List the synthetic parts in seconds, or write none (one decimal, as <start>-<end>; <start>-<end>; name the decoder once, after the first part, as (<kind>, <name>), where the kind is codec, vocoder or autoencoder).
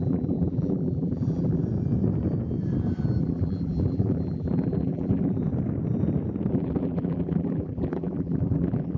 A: 0.0-1.6 (vocoder, BigVGAN v2); 3.2-5.4; 6.5-9.0